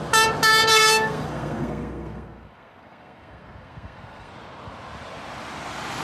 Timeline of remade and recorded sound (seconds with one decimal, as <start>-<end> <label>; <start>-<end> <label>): 0.0-0.7 recorded; 0.7-4.3 remade; 4.3-6.0 recorded